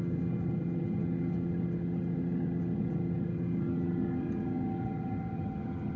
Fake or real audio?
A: fake